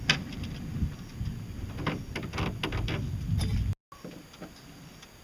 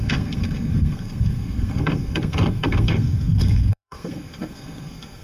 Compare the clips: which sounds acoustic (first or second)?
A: first